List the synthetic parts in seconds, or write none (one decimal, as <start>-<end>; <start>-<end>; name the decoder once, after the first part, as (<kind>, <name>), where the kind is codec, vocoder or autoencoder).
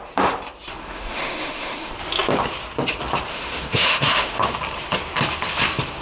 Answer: 0.8-1.9 (autoencoder, DAC-VAE); 3.3-4.5